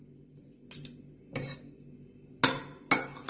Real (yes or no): yes